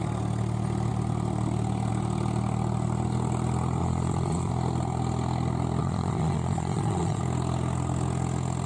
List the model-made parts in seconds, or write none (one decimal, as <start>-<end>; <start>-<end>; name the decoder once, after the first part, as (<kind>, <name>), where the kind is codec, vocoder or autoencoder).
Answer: 3.8-4.5 (vocoder, Vocos); 5.8-7.2